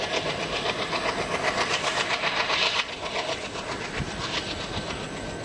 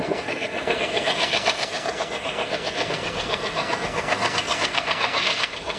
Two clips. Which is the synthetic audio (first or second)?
second